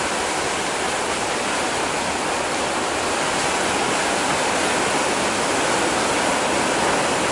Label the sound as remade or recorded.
recorded